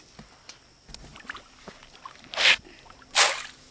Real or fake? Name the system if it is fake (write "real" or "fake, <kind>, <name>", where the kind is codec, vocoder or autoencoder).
real